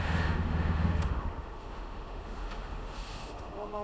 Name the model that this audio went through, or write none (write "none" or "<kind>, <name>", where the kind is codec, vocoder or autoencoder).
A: autoencoder, DAC-VAE